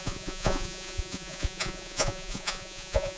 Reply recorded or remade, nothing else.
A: remade